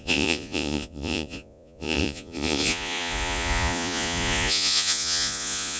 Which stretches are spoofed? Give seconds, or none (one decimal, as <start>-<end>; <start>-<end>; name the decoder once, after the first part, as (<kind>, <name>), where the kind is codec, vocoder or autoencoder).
0.0-5.8 (vocoder, Vocos)